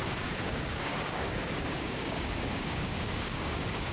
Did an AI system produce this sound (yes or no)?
yes